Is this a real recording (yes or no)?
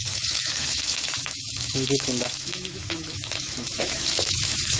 no